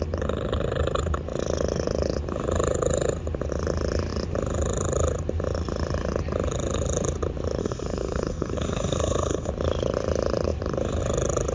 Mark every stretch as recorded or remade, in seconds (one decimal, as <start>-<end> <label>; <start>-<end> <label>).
0.0-7.6 recorded; 7.6-9.5 remade; 9.5-11.5 recorded